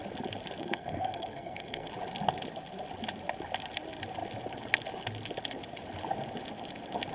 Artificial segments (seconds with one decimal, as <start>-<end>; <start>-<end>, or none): 0.6-1.9